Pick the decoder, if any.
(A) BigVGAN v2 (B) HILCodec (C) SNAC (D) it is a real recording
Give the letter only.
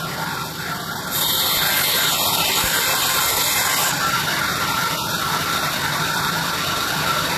D